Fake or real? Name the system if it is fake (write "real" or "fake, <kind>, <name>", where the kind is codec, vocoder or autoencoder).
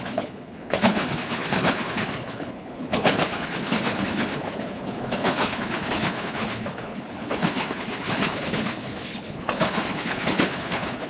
fake, codec, HILCodec